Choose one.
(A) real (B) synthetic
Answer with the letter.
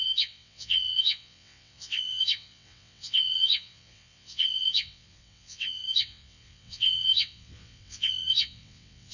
B